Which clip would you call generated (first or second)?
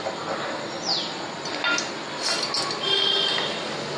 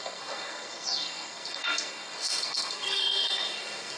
second